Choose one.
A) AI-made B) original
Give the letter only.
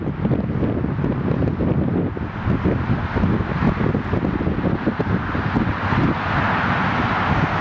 B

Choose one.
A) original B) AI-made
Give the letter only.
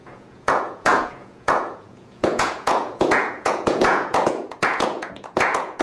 B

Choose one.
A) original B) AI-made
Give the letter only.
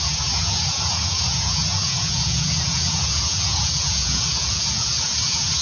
B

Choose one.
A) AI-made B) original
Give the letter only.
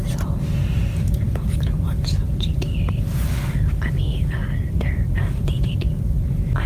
B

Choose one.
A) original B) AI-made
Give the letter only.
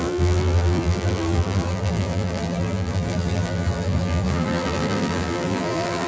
B